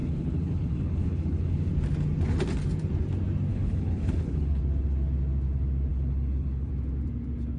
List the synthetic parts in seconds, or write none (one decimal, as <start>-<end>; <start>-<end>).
0.0-1.7; 3.5-4.6; 5.9-6.7